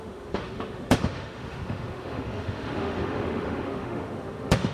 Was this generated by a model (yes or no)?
yes